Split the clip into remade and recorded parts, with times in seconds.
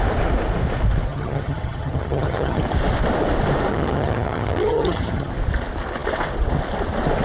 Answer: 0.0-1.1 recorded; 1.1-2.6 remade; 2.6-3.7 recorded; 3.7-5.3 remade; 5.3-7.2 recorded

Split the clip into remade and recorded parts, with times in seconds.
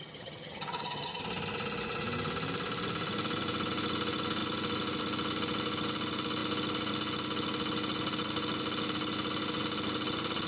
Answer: 0.0-1.2 remade; 1.2-10.5 recorded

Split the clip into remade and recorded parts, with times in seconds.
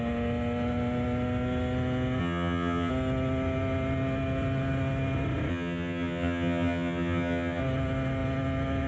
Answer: 0.0-2.2 recorded; 2.2-2.9 remade; 2.9-5.5 recorded; 5.5-7.6 remade; 7.6-8.9 recorded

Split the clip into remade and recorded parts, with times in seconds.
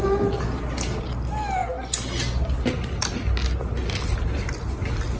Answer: 0.0-5.2 recorded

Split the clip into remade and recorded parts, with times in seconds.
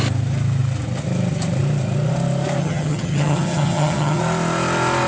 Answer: 0.0-2.6 recorded; 2.6-4.2 remade; 4.2-5.1 recorded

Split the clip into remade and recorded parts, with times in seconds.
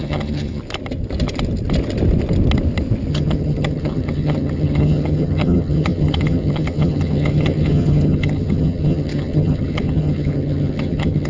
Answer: 0.0-0.6 remade; 0.6-3.1 recorded; 3.1-11.3 remade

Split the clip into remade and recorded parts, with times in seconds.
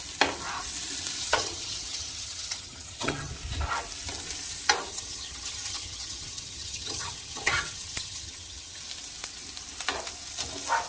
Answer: 0.0-1.2 recorded; 1.2-3.3 remade; 3.3-4.9 recorded; 4.9-8.8 remade; 8.8-10.9 recorded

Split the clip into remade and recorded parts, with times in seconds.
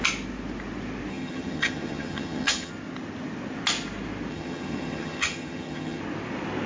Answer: 0.0-1.1 recorded; 1.1-2.7 remade; 2.7-4.3 recorded; 4.3-6.0 remade; 6.0-6.7 recorded